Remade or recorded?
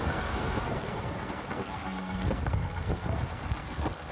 remade